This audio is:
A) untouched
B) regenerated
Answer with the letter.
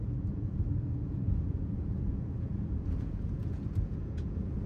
B